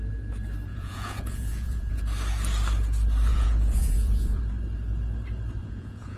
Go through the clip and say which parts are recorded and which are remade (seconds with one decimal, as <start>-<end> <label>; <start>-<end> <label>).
0.0-0.7 recorded; 0.7-2.0 remade; 2.0-3.3 recorded; 3.3-4.4 remade; 4.4-5.6 recorded; 5.6-6.2 remade